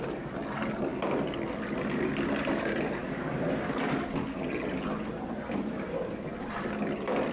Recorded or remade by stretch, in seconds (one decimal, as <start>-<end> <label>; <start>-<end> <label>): 0.0-7.3 recorded